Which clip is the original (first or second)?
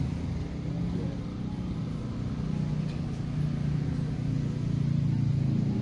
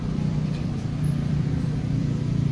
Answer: first